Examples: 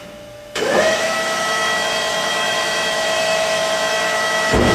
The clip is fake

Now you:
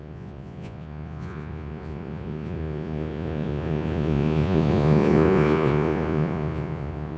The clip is fake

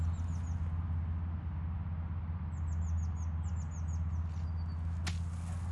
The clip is real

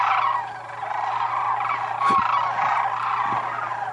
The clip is real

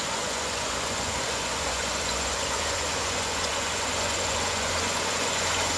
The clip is fake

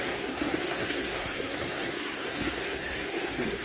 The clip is fake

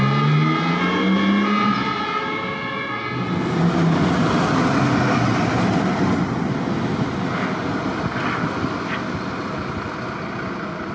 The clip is real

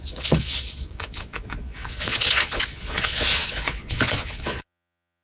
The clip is fake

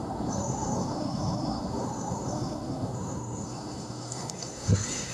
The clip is fake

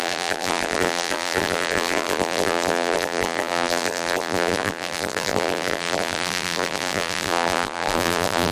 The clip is fake